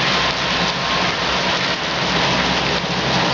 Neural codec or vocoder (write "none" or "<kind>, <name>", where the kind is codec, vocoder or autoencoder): none